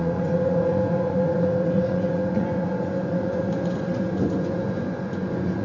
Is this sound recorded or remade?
remade